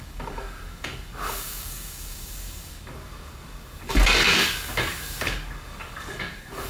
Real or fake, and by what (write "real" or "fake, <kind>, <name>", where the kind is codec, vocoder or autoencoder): fake, codec, DAC